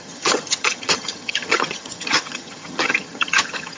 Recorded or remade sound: remade